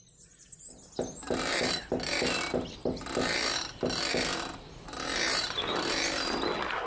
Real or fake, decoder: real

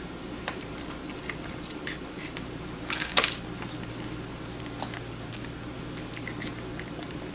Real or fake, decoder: real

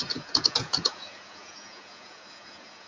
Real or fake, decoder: fake, vocoder, Vocos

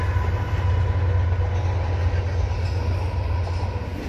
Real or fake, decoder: real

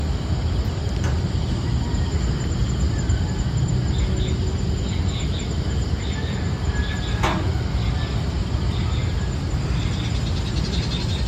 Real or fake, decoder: real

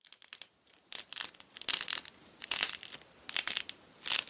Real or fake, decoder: real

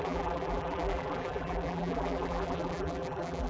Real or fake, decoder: fake, vocoder, BigVGAN v2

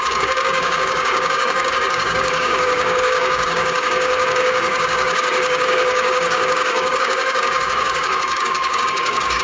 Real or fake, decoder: fake, codec, DAC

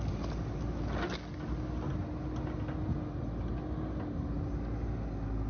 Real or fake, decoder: real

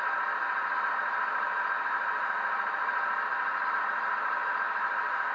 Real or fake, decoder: real